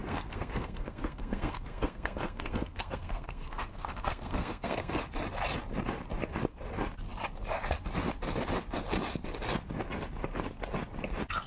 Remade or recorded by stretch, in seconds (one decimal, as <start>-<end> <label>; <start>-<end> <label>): 0.0-5.0 remade; 5.0-11.5 recorded